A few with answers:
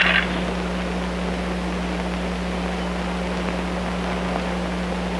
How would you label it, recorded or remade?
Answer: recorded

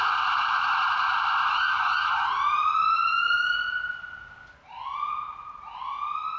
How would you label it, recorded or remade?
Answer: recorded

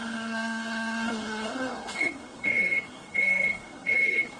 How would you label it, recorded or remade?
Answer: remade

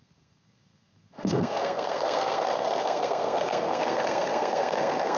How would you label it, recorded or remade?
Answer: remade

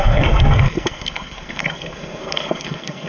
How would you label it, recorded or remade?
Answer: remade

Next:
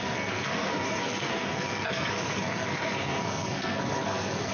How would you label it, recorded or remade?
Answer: remade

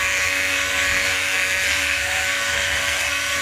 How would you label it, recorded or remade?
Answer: remade